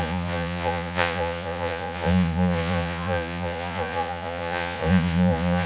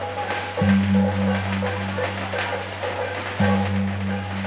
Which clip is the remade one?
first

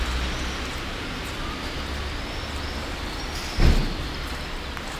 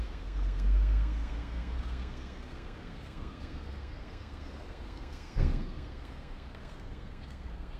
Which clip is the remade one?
second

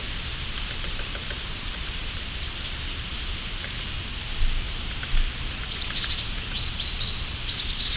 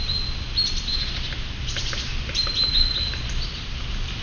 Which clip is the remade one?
first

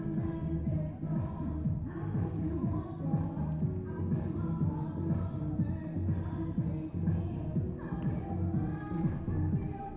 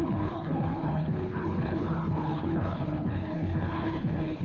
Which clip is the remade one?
second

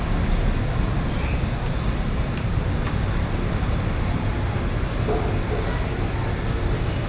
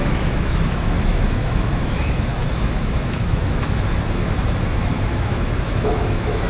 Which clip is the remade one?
second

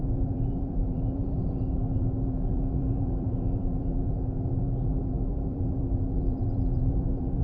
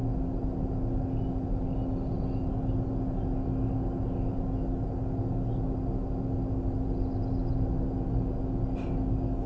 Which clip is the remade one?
first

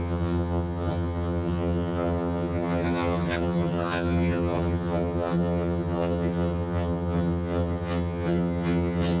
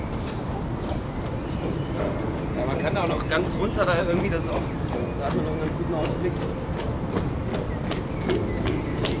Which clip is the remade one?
first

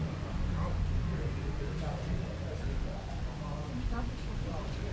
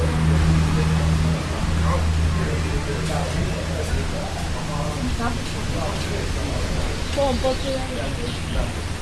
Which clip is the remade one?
first